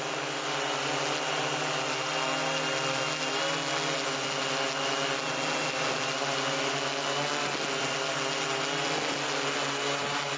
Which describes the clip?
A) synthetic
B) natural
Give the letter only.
B